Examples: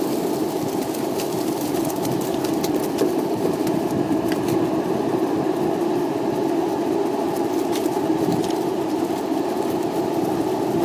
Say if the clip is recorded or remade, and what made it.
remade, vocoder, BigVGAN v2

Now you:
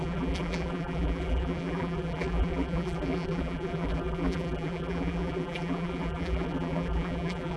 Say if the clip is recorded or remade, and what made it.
remade, vocoder, BigVGAN v2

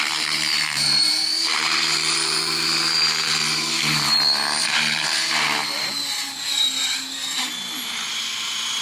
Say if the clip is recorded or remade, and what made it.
remade, vocoder, BigVGAN v2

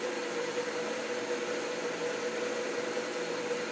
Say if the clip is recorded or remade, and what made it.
remade, vocoder, BigVGAN v2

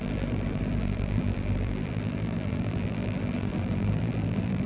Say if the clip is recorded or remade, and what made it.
remade, vocoder, BigVGAN v2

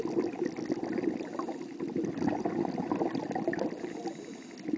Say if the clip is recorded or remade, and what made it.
recorded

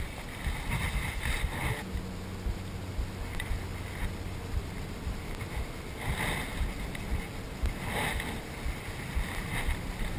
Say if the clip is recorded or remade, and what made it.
recorded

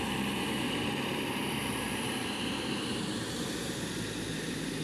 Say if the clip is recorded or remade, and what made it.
remade, vocoder, BigVGAN v2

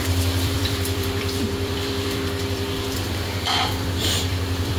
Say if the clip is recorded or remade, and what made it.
remade, vocoder, BigVGAN v2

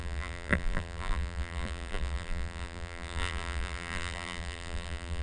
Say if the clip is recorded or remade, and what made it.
remade, vocoder, BigVGAN v2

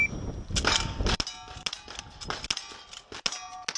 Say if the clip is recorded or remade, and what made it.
recorded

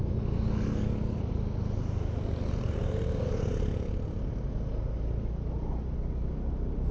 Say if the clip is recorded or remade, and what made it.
recorded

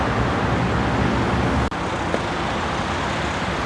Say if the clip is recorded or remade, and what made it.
recorded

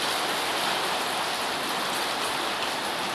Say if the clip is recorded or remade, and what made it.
recorded